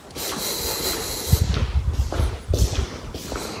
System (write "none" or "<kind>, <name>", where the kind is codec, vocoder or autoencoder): none